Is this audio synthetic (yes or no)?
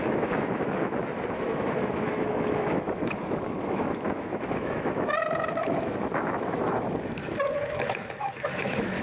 yes